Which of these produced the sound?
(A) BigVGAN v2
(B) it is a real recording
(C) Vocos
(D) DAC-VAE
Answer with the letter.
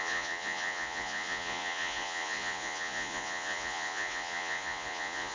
C